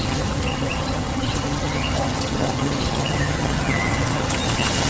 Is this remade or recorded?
remade